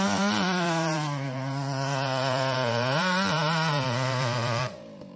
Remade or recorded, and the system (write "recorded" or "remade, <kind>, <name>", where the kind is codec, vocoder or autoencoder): remade, vocoder, BigVGAN v2